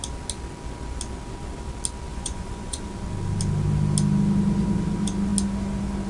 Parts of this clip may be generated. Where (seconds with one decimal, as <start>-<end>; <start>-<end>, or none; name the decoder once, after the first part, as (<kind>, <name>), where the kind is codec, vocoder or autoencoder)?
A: 2.1-2.8 (vocoder, Vocos)